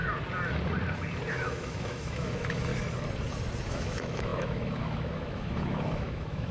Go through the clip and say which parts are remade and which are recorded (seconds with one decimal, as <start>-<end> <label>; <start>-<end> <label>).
0.0-1.3 recorded; 1.3-2.7 remade; 2.7-3.7 recorded; 3.7-6.5 remade